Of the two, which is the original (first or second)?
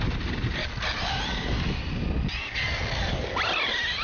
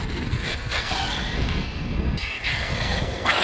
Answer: first